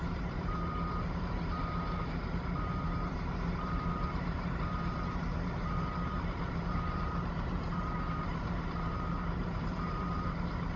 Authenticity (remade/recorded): remade